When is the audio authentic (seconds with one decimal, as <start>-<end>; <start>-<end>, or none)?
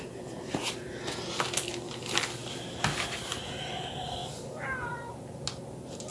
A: 0.0-6.1